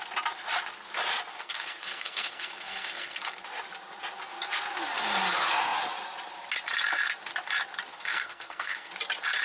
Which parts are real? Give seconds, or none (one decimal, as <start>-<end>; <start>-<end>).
0.0-1.3; 3.4-7.9; 8.9-9.4